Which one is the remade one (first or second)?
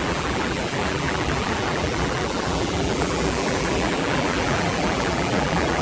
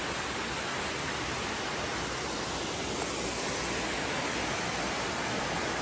first